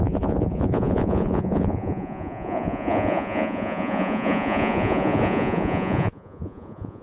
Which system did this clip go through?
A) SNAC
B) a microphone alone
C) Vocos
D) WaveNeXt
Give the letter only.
C